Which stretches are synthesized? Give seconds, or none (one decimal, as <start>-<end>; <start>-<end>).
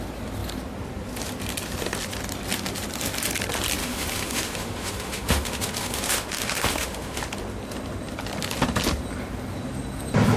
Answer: 3.8-7.2